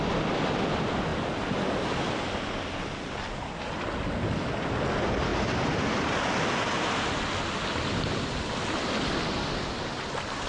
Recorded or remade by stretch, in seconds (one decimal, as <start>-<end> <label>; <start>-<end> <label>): 0.0-10.5 recorded